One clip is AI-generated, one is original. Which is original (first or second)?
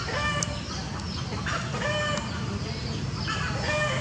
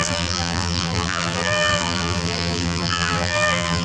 first